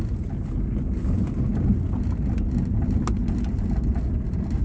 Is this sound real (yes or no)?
yes